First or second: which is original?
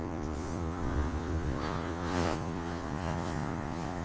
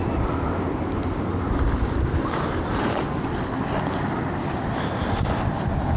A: second